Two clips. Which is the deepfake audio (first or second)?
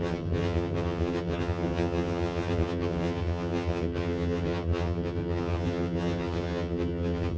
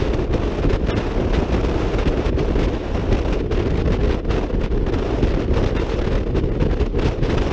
first